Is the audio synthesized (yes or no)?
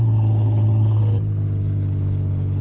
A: yes